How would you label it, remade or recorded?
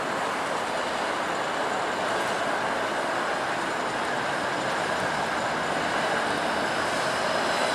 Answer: remade